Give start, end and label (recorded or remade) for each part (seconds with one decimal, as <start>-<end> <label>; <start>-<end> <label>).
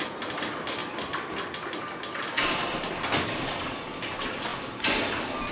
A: 0.0-5.5 recorded